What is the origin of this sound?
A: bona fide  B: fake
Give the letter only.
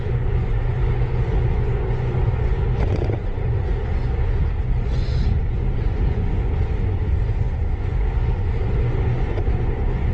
B